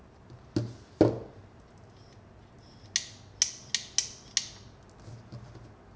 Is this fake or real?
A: real